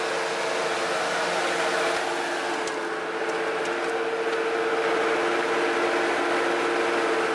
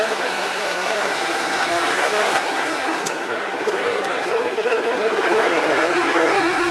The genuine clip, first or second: first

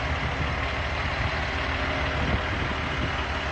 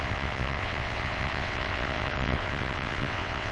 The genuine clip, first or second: first